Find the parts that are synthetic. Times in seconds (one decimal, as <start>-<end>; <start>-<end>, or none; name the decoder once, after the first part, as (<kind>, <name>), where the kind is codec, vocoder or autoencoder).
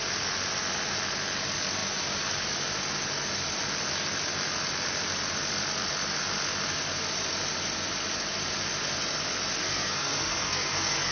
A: 9.6-11.1 (codec, SNAC)